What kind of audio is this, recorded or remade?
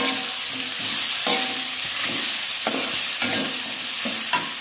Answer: recorded